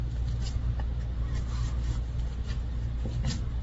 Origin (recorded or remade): recorded